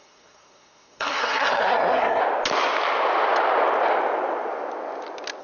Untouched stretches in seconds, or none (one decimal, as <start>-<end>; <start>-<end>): 2.2-5.4